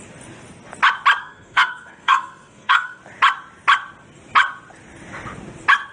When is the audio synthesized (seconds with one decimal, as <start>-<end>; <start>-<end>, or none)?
1.2-3.0